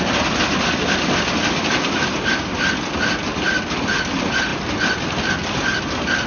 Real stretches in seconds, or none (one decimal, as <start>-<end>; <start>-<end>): 0.0-6.3